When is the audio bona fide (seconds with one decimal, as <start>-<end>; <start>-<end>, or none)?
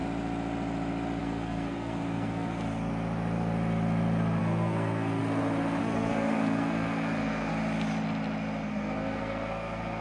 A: 0.0-1.2; 2.9-4.4; 5.2-5.8; 7.5-8.7